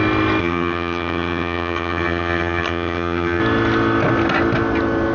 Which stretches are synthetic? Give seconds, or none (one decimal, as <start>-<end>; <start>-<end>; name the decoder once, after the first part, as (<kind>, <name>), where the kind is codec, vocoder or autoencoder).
0.4-3.4 (vocoder, HiFi-GAN)